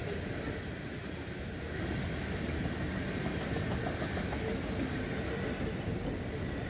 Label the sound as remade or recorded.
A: recorded